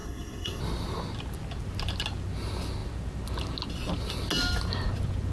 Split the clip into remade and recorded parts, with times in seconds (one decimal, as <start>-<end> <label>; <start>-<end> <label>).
0.0-0.6 remade; 0.6-5.3 recorded